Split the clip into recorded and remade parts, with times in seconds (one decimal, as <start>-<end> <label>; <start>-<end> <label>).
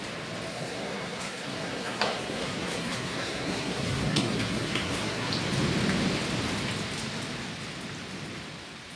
0.0-0.5 recorded; 0.5-5.3 remade; 5.3-9.0 recorded